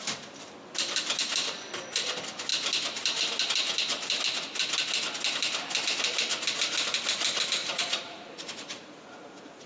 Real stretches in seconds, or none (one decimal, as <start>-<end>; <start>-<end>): 0.0-7.6